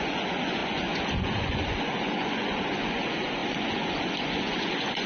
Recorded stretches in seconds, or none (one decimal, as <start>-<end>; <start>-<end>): none